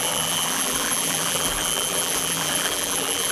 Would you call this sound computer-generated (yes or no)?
yes